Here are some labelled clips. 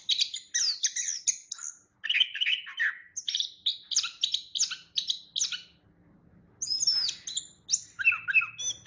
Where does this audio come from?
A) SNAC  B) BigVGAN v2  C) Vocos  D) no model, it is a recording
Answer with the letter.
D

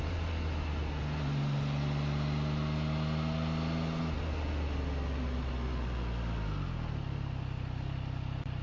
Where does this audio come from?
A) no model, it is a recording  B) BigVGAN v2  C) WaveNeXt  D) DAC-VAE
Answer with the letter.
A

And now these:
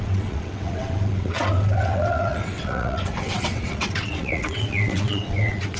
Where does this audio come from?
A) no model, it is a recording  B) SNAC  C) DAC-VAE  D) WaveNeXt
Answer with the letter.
D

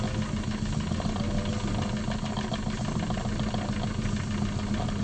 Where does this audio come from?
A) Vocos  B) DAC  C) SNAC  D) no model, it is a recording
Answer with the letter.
D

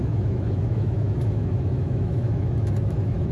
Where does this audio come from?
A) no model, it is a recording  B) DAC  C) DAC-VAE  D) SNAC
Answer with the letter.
C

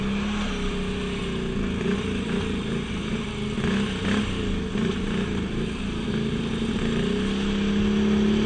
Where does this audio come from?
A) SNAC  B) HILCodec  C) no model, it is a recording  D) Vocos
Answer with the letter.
C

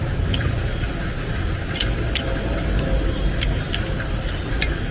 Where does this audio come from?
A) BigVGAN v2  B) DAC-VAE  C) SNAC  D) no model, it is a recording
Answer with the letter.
D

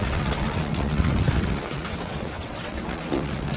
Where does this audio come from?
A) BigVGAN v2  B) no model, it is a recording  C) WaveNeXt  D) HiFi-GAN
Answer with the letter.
C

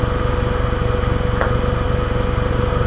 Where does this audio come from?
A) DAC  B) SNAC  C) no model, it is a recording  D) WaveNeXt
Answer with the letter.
C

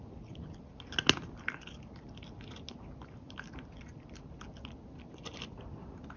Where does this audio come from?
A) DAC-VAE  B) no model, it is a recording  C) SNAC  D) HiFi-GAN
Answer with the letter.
B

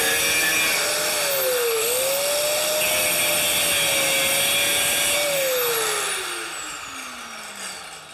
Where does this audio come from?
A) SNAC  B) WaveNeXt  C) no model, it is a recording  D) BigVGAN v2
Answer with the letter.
C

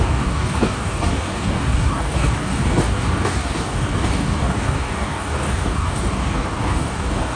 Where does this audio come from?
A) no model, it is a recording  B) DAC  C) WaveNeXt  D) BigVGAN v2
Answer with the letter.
B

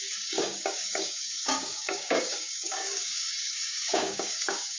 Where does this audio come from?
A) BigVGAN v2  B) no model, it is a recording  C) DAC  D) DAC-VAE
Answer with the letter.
C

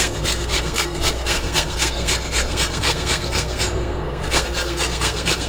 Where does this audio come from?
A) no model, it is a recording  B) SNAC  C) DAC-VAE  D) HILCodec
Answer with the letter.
B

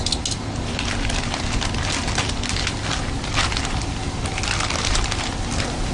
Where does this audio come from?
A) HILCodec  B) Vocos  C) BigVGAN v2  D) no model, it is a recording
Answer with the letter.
D